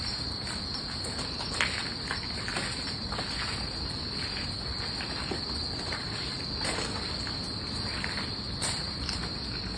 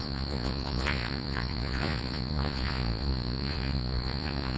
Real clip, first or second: first